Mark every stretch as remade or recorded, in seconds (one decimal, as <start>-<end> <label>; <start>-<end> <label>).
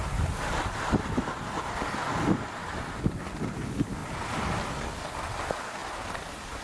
0.0-6.6 recorded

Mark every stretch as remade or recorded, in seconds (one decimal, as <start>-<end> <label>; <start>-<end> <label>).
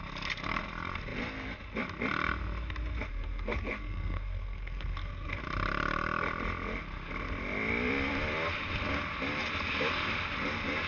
0.0-3.1 recorded; 3.1-5.4 remade; 5.4-10.9 recorded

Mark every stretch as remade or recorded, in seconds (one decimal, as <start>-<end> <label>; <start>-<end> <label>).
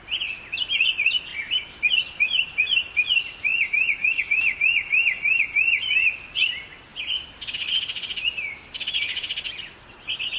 0.0-1.3 recorded; 1.3-1.9 remade; 1.9-10.4 recorded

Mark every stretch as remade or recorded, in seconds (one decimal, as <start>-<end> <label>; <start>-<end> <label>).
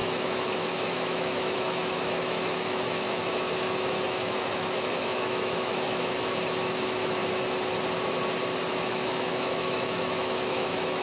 0.0-7.2 remade; 7.2-8.7 recorded; 8.7-11.0 remade